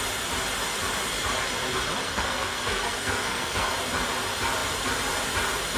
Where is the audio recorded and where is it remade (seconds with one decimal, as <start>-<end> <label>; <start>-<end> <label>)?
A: 0.0-2.0 recorded; 2.0-3.7 remade; 3.7-5.8 recorded